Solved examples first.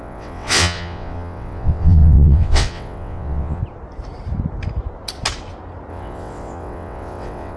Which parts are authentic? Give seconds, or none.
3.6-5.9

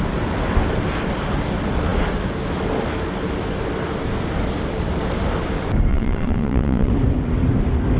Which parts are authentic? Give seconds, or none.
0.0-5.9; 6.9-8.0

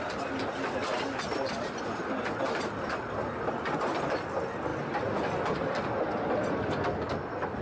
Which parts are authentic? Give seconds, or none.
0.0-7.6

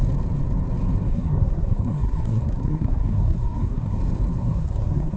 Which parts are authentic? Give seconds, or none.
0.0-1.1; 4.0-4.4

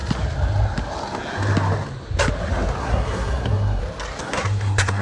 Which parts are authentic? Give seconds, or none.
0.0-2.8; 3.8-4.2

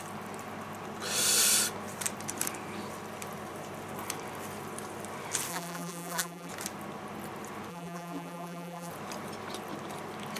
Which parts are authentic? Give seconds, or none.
0.0-5.5; 6.5-7.7; 8.9-10.4